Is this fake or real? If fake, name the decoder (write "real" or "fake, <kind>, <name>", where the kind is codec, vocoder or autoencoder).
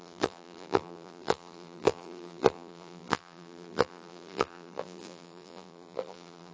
fake, vocoder, BigVGAN v2